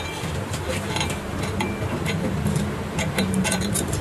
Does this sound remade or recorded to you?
recorded